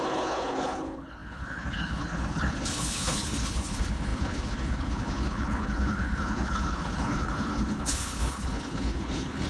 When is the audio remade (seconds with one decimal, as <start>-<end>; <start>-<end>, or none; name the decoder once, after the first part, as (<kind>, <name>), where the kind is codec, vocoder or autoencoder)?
0.0-9.5 (codec, HILCodec)